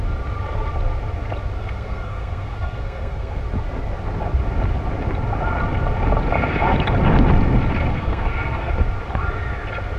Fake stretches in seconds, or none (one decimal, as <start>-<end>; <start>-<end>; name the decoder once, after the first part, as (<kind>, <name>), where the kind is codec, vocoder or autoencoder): 1.6-3.4 (codec, SNAC); 7.9-8.7